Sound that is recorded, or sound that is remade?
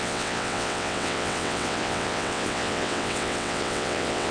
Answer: remade